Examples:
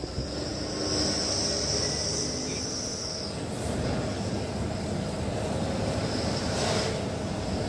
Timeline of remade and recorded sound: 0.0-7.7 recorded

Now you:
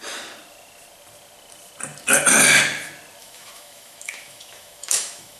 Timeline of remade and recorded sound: 0.0-3.2 recorded; 3.2-5.4 remade

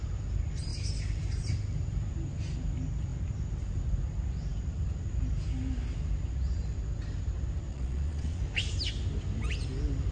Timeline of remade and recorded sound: 0.0-7.7 recorded; 7.7-8.4 remade; 8.4-10.1 recorded

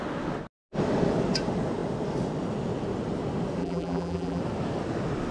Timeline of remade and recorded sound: 0.0-3.6 recorded; 3.6-4.4 remade; 4.4-5.3 recorded

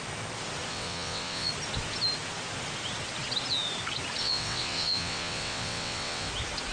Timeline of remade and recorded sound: 0.0-0.7 recorded; 0.7-1.5 remade; 1.5-4.2 recorded; 4.2-6.3 remade; 6.3-6.7 recorded

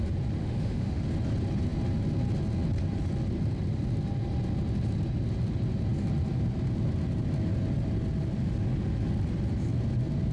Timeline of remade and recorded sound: 0.0-0.4 recorded; 0.4-1.0 remade; 1.0-10.3 recorded